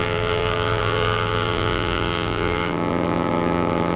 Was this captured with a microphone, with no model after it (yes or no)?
no